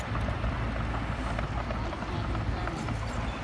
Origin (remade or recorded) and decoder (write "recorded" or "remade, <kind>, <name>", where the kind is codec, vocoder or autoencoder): recorded